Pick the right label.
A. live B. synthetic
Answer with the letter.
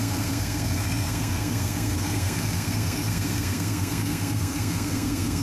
B